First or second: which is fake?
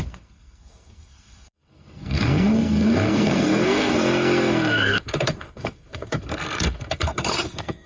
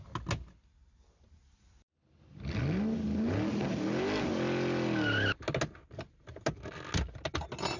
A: first